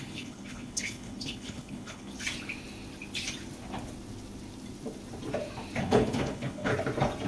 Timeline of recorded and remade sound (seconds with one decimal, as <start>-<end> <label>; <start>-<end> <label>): 0.0-2.1 remade; 2.1-5.8 recorded; 5.8-6.7 remade; 6.7-7.3 recorded